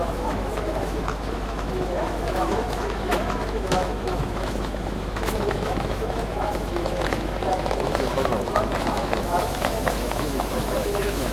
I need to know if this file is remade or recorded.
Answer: remade